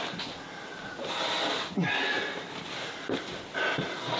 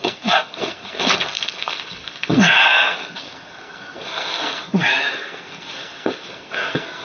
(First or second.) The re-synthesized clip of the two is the second